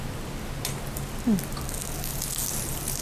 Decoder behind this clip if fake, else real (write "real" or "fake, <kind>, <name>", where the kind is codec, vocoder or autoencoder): real